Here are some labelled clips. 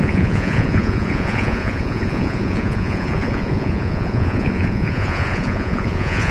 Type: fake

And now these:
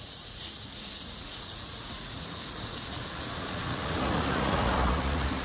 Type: fake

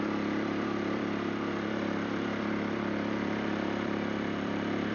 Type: fake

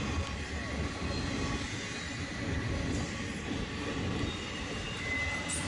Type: real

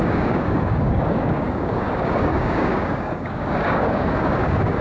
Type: fake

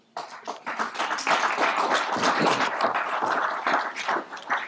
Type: real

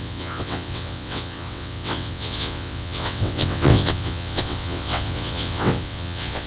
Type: fake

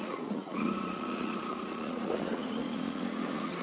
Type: fake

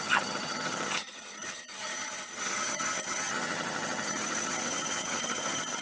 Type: fake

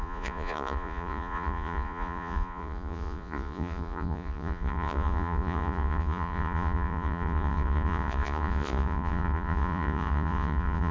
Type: fake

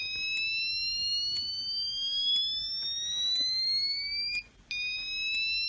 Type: real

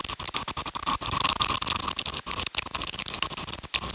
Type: real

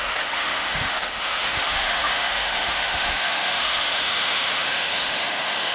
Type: fake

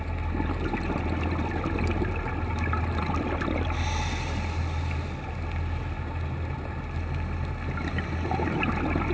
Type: real